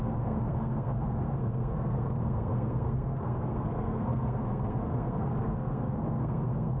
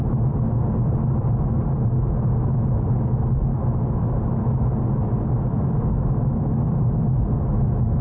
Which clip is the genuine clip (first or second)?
second